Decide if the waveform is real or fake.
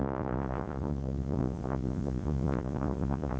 fake